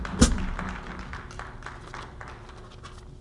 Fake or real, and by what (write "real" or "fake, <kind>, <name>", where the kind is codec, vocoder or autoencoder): real